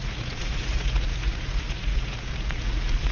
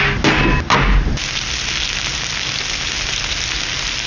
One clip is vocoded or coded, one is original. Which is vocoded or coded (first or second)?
first